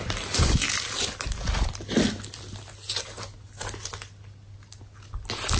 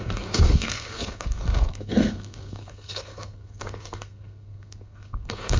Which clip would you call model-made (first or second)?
second